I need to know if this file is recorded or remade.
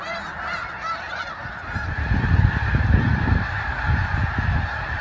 recorded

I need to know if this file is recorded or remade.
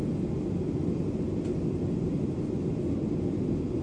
recorded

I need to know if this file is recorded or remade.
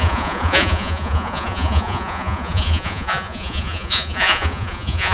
remade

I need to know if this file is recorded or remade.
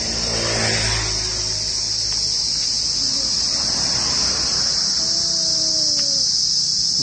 recorded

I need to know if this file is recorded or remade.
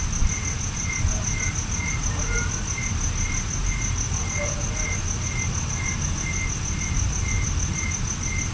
recorded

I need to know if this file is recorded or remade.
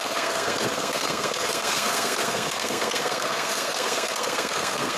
remade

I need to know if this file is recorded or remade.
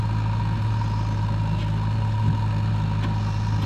recorded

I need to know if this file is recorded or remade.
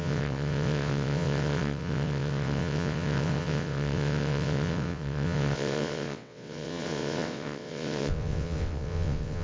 remade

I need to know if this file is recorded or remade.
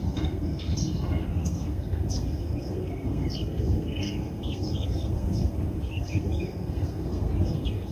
remade